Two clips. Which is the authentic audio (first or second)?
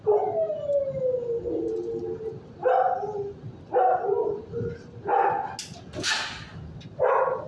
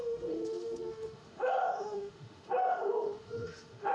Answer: first